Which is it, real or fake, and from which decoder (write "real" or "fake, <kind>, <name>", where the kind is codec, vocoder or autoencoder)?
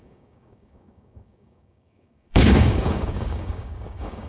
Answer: fake, codec, DAC